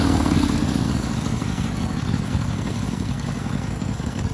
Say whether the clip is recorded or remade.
remade